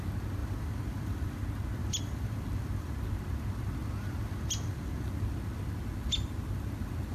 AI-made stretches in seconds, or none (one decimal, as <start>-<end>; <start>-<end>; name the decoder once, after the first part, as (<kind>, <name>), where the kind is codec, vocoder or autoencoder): 0.4-1.4 (vocoder, BigVGAN v2); 1.8-2.9; 3.8-5.1